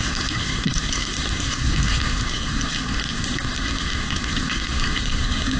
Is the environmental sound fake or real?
fake